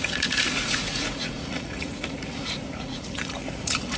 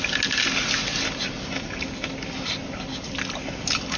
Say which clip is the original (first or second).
second